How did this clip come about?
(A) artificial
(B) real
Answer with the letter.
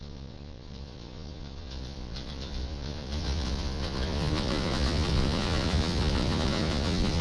A